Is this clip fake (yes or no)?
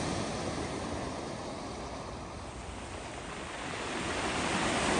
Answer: no